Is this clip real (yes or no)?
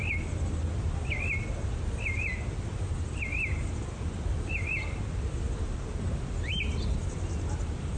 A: yes